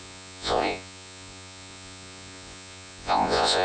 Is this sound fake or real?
fake